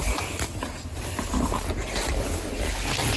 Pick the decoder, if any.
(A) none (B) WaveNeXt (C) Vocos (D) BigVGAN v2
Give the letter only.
A